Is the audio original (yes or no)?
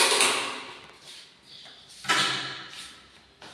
yes